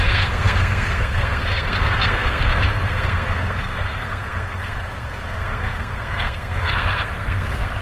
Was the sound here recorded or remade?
remade